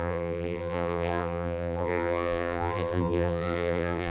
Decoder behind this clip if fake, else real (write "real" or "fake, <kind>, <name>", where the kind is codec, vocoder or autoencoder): fake, vocoder, BigVGAN v2